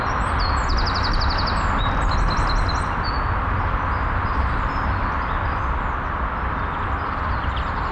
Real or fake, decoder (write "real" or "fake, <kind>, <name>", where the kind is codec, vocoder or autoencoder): real